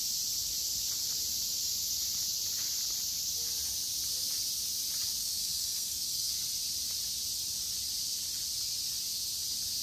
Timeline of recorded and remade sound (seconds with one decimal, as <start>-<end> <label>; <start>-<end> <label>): 0.0-5.2 recorded; 5.2-6.3 remade; 6.3-9.8 recorded